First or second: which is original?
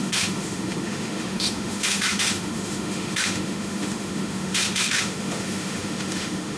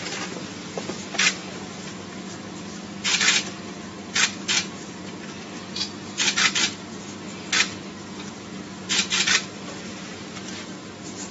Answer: second